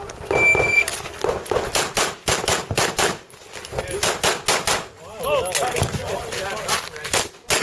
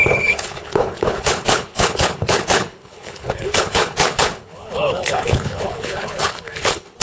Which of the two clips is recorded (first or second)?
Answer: first